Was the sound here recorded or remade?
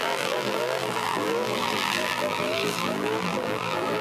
remade